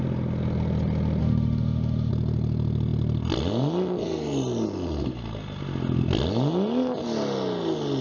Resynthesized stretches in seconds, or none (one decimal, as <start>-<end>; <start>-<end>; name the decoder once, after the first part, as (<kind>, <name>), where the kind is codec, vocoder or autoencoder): 1.2-2.1 (autoencoder, DAC-VAE)